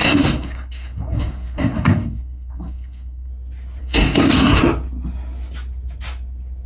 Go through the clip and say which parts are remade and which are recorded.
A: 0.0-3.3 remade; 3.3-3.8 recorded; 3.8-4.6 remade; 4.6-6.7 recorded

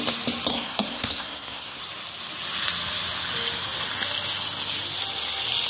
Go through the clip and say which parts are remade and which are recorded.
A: 0.0-0.5 recorded; 0.5-1.8 remade; 1.8-5.7 recorded

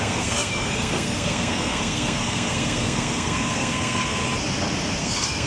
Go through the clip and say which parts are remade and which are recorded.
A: 0.0-4.2 remade; 4.2-5.0 recorded; 5.0-5.5 remade